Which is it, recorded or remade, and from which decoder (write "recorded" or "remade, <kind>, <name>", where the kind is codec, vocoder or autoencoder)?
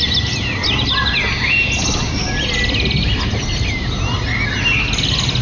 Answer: recorded